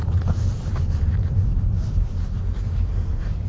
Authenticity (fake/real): fake